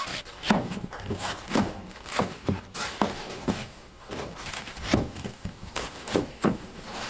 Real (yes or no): no